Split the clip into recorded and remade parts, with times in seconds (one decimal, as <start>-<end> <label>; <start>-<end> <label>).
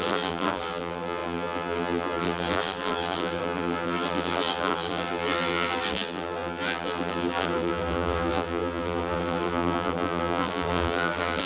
0.0-11.5 remade